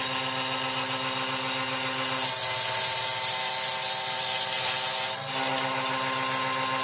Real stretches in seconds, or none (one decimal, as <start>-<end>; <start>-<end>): 0.0-6.8